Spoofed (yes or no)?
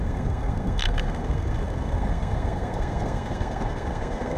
yes